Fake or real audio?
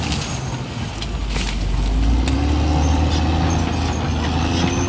real